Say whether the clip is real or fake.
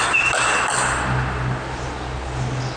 real